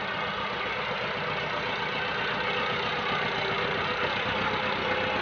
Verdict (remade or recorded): recorded